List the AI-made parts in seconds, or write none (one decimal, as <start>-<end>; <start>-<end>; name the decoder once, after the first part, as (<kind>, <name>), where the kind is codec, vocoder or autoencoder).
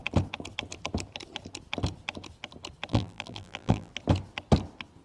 2.9-3.9 (vocoder, BigVGAN v2)